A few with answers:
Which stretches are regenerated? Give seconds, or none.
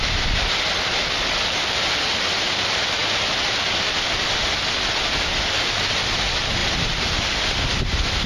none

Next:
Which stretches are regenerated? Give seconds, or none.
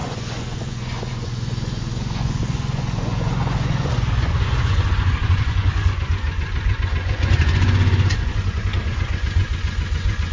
0.0-10.3 (vocoder, Vocos)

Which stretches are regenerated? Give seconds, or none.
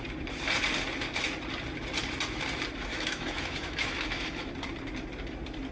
2.9-4.5 (autoencoder, DAC-VAE)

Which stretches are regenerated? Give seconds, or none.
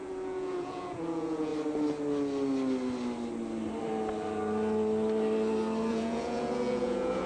0.0-1.5 (vocoder, Vocos); 5.9-7.3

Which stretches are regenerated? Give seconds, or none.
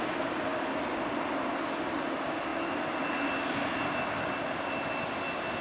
none